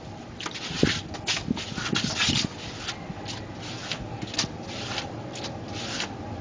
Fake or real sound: real